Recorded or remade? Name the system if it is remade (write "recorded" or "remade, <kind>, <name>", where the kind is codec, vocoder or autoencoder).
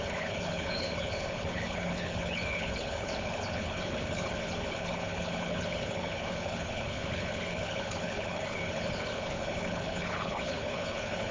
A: remade, codec, HILCodec